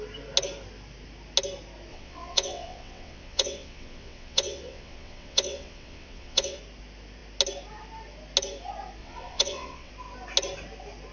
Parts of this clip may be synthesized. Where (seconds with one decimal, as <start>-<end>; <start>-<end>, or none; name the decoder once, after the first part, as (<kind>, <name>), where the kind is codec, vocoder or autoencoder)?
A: 1.9-6.6 (vocoder, WaveNeXt); 9.0-9.9